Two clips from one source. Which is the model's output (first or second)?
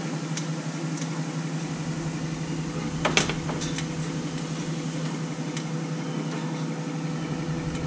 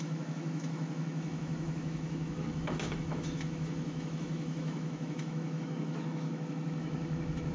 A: second